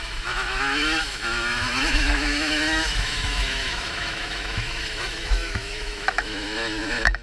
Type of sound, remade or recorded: remade